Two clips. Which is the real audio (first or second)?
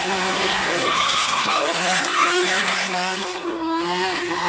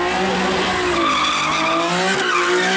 second